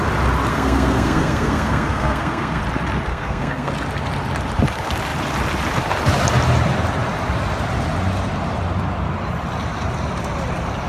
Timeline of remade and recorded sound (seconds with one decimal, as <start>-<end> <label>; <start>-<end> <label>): 0.0-0.5 recorded; 0.5-2.6 remade; 2.6-3.1 recorded; 3.1-3.7 remade; 3.7-10.9 recorded